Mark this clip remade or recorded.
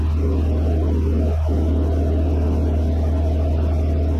recorded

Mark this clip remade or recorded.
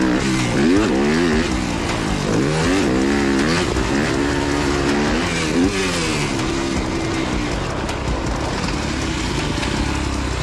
recorded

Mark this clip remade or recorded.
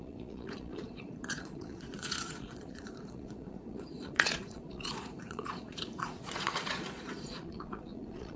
remade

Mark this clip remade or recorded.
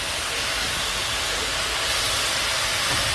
recorded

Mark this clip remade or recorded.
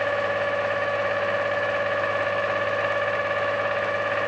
remade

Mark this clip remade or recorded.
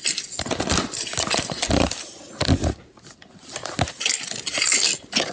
recorded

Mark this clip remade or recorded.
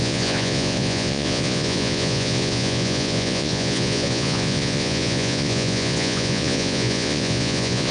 remade